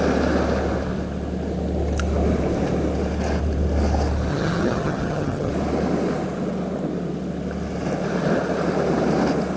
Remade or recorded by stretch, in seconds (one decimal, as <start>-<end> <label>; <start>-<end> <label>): 0.0-4.3 recorded; 4.3-5.5 remade; 5.5-9.6 recorded